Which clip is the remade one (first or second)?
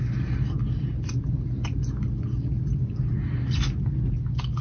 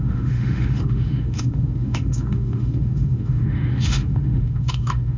second